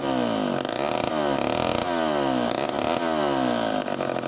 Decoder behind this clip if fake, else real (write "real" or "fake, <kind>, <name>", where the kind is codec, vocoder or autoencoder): real